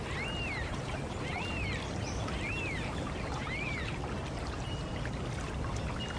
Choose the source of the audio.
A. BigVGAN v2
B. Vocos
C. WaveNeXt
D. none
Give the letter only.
D